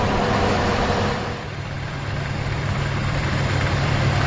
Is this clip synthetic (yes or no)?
yes